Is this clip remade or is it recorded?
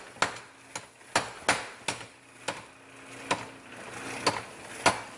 recorded